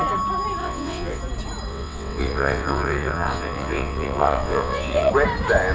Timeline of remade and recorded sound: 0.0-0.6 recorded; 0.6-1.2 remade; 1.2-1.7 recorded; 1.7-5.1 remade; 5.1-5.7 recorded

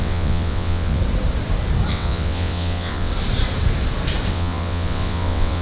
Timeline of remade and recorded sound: 0.0-1.0 remade; 1.0-1.9 recorded; 1.9-3.1 remade; 3.1-4.3 recorded; 4.3-5.6 remade